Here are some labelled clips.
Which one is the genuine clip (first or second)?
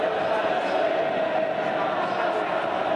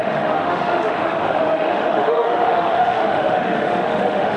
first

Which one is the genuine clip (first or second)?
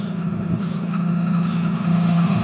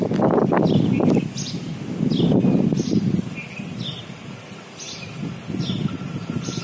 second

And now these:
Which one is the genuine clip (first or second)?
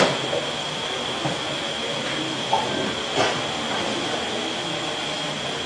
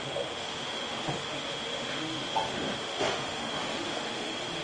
first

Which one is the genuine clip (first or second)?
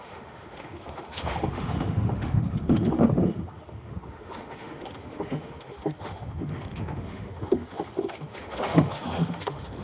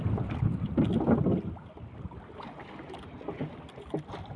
second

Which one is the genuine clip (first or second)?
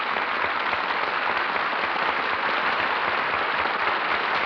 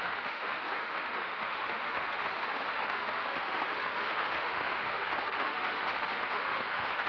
first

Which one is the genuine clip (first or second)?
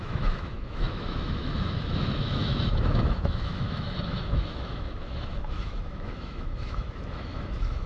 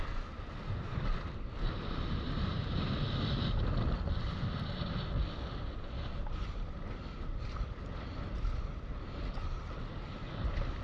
second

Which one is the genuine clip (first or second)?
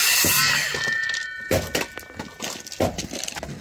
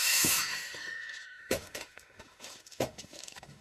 first